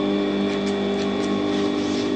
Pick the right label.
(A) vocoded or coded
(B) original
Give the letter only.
B